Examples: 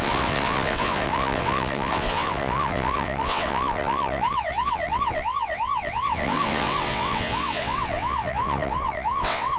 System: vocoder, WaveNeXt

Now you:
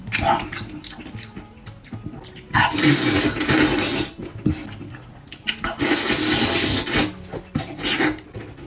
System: none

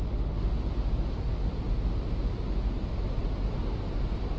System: none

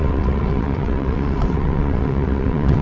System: vocoder, WaveNeXt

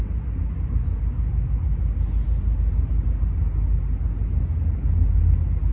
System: none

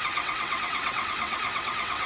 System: vocoder, WaveNeXt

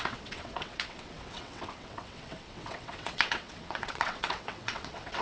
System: vocoder, WaveNeXt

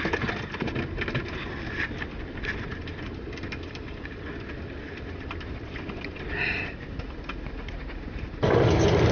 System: none